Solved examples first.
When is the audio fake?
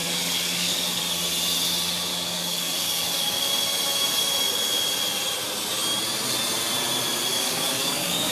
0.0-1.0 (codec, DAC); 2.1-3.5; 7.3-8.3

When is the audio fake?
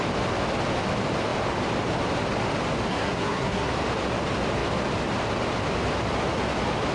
2.9-3.7 (codec, SNAC)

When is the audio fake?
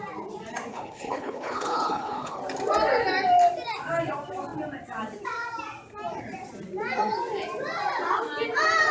0.7-2.4 (codec, HILCodec)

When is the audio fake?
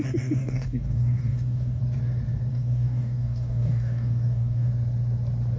0.0-1.8 (codec, DAC); 2.5-4.7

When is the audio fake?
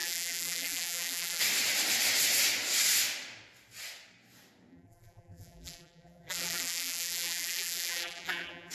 0.0-1.4 (vocoder, BigVGAN v2); 4.7-8.7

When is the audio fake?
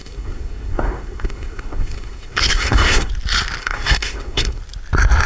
0.0-3.1 (codec, SNAC); 3.6-4.6